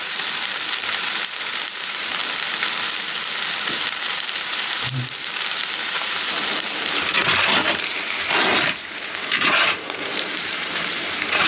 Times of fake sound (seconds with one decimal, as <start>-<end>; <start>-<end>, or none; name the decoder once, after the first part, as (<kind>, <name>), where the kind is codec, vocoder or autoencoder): 0.0-2.2 (vocoder, BigVGAN v2); 4.0-11.5

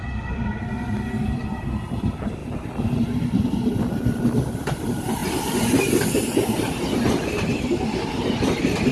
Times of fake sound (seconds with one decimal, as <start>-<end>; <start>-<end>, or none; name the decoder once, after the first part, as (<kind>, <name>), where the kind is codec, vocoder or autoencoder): 2.4-3.8 (vocoder, BigVGAN v2); 5.2-5.8; 6.2-7.0